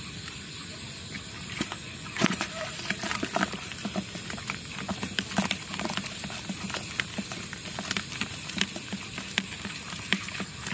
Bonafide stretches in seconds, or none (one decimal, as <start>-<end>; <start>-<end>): 0.0-1.8; 2.5-10.7